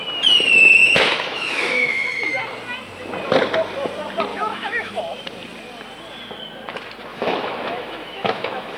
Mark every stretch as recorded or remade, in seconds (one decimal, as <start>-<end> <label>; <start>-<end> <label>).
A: 0.0-0.8 recorded; 0.8-2.4 remade; 2.4-4.3 recorded; 4.3-5.0 remade; 5.0-7.1 recorded; 7.1-8.8 remade